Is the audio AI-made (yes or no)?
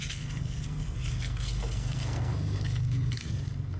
yes